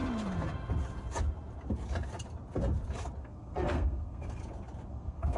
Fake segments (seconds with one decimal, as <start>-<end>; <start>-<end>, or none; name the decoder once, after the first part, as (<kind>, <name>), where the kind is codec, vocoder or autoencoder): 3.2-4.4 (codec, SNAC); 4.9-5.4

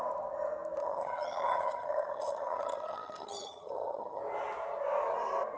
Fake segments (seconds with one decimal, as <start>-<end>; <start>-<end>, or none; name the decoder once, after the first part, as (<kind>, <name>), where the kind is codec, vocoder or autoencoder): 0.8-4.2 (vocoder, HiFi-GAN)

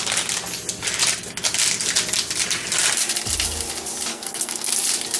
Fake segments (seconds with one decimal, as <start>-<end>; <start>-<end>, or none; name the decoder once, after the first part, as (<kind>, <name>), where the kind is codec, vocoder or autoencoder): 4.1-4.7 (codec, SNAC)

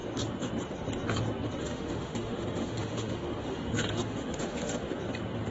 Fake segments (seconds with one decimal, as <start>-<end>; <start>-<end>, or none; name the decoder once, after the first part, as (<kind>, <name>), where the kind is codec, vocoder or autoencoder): 1.6-4.9 (autoencoder, DAC-VAE)

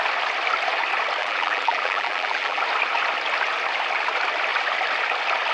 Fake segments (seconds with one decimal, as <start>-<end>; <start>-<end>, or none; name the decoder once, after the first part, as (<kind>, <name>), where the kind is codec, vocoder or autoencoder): 1.2-2.6 (vocoder, BigVGAN v2)

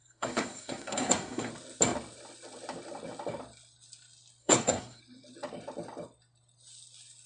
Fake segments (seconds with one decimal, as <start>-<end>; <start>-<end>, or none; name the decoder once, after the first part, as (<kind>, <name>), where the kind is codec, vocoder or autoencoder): 0.0-1.5 (codec, SNAC); 4.4-5.0

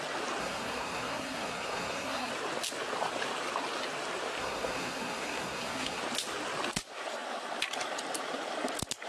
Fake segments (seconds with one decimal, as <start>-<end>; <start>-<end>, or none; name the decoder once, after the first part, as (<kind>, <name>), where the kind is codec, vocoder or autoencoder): 0.4-2.3 (codec, SNAC); 4.4-6.0

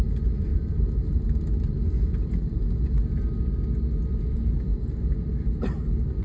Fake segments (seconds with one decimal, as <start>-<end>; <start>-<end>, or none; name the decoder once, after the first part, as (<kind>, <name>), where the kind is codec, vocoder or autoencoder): none